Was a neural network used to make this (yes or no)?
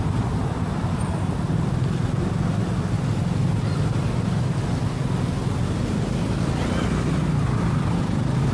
no